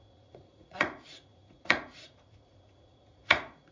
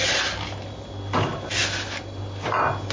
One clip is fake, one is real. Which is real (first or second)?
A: second